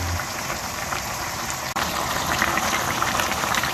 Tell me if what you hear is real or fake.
fake